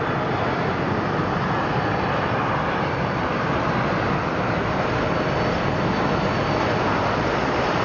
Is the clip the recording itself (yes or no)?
yes